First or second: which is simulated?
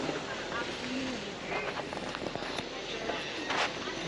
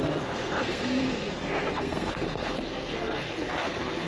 second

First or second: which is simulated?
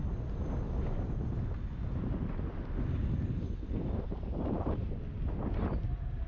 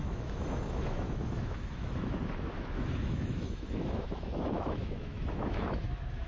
second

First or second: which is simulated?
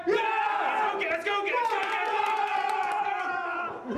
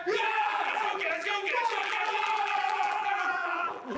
second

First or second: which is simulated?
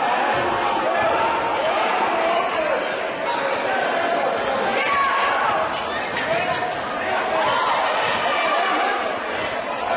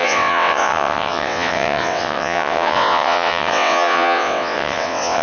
second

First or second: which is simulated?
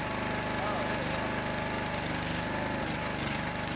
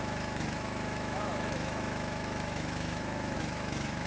second